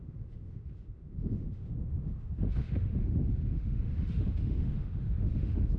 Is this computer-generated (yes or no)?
yes